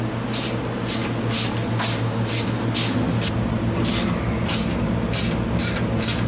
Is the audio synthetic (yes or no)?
no